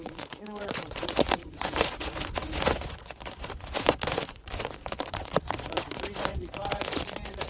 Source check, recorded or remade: remade